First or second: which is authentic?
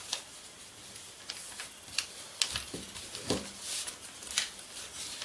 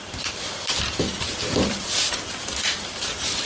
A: first